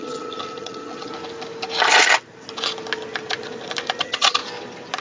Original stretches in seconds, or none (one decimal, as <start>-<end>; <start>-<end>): 1.1-4.0; 4.4-5.0